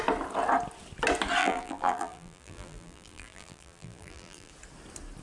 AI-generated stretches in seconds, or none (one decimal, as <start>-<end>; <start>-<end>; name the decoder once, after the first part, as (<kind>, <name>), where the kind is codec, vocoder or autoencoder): 1.4-4.5 (vocoder, BigVGAN v2)